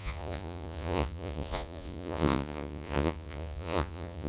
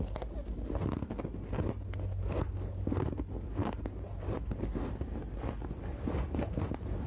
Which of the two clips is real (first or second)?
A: second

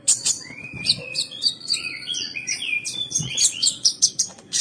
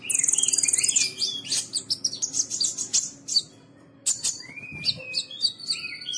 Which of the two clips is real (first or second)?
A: second